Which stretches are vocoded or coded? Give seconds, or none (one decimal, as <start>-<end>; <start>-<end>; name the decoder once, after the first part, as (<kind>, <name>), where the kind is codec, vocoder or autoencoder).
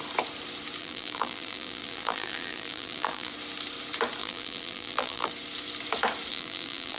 0.8-3.3 (vocoder, BigVGAN v2); 4.2-5.3; 6.3-7.0